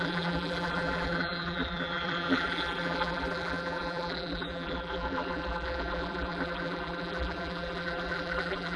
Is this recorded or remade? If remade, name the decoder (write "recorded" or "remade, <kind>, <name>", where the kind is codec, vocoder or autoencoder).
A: remade, vocoder, BigVGAN v2